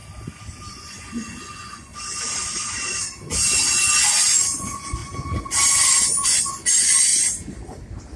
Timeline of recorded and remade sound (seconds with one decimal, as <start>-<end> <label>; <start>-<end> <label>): 0.0-0.7 recorded; 0.7-1.9 remade; 1.9-4.1 recorded; 4.1-5.0 remade; 5.0-5.9 recorded; 5.9-7.1 remade; 7.1-8.2 recorded